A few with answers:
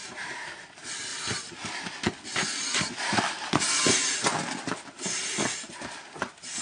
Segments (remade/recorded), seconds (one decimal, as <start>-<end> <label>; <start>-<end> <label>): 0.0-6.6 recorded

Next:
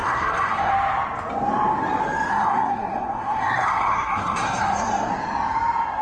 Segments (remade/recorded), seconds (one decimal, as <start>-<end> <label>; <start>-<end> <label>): 0.0-0.7 remade; 0.7-2.3 recorded; 2.3-5.1 remade; 5.1-6.0 recorded

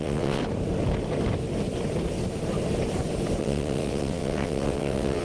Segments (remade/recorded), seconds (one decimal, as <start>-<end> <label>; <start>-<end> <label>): 0.0-0.4 remade; 0.4-3.4 recorded; 3.4-5.2 remade

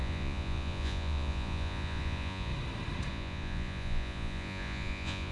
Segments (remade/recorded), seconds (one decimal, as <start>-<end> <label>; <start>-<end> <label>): 0.0-2.5 remade; 2.5-3.1 recorded; 3.1-5.3 remade

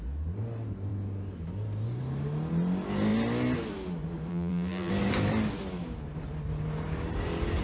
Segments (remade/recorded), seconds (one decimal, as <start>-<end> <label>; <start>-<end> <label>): 0.0-4.3 recorded; 4.3-4.9 remade; 4.9-7.6 recorded

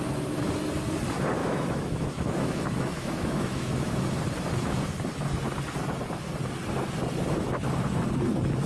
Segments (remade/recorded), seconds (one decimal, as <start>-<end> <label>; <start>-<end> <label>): 0.0-1.4 recorded; 1.4-4.1 remade; 4.1-8.7 recorded